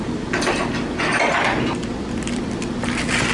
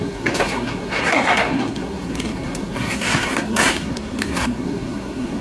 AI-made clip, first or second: second